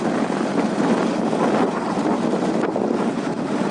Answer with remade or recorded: recorded